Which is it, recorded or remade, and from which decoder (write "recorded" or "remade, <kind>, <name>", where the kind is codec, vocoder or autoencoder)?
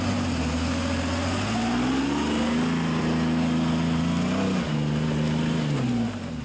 recorded